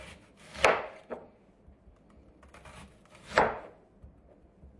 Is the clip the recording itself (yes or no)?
yes